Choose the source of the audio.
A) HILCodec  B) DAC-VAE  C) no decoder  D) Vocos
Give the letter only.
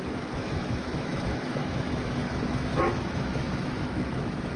B